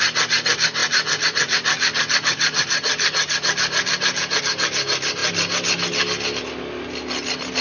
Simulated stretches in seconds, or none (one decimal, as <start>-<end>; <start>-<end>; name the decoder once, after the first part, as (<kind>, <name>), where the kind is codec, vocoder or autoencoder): none